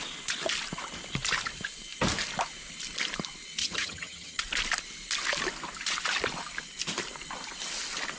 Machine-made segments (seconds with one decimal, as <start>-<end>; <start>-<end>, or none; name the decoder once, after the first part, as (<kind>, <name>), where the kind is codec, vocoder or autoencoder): 3.6-4.4 (vocoder, HiFi-GAN)